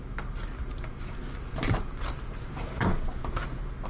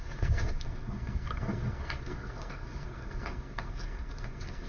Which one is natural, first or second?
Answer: first